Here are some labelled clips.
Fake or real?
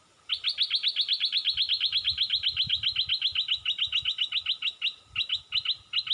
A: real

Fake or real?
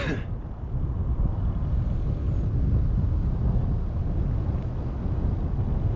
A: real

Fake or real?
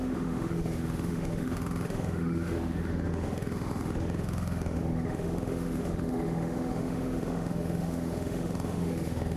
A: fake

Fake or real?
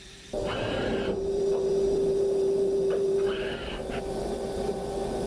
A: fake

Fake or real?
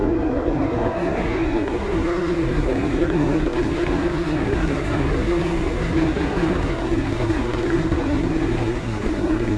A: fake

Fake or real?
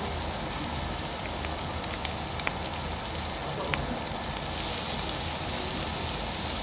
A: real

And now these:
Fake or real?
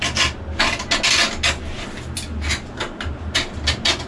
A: real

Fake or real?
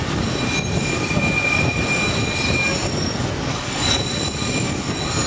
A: real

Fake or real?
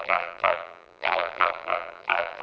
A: fake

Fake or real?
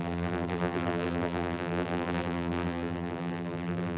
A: fake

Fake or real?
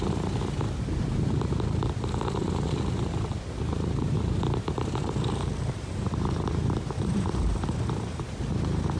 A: fake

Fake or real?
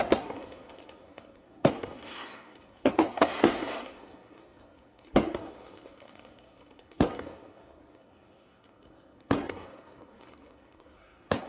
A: fake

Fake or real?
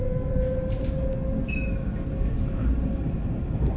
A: real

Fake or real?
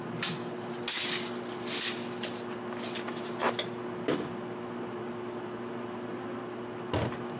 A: real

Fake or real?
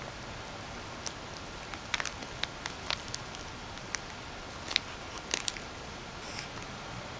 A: real